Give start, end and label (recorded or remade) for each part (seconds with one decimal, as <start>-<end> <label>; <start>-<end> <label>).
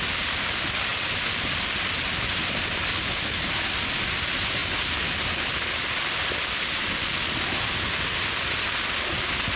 0.0-9.6 recorded